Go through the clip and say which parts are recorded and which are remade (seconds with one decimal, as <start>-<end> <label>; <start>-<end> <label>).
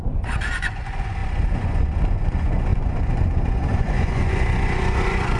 0.0-5.4 remade